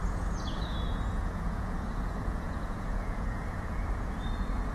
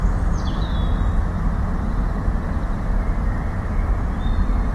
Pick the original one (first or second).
second